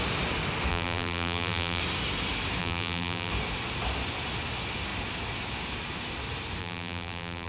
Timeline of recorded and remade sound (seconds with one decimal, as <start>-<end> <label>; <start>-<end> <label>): 0.0-0.7 recorded; 0.7-1.8 remade; 1.8-2.6 recorded; 2.6-3.3 remade; 3.3-6.6 recorded; 6.6-7.5 remade